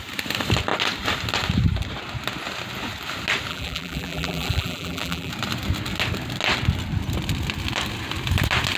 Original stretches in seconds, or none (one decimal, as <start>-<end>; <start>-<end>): 0.0-3.5; 5.3-8.8